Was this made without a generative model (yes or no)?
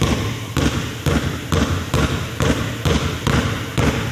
yes